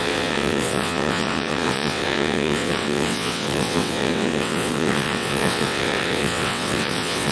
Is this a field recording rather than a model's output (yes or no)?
no